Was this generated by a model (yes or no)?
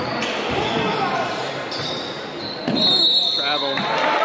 no